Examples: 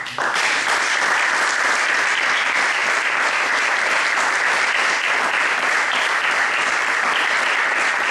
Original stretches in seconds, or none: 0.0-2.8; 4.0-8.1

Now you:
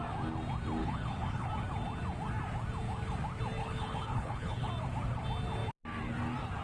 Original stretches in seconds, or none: 0.0-0.8; 1.5-3.6; 4.7-6.6

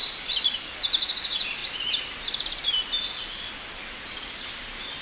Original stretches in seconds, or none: 0.0-5.0

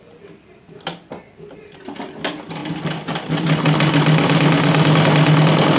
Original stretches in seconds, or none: 0.0-5.8

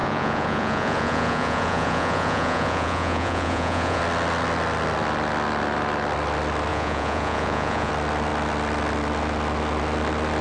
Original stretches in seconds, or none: 4.0-6.7; 7.9-10.4